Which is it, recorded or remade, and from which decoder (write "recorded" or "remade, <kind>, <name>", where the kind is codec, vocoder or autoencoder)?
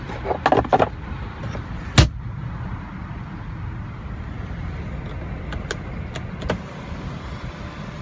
recorded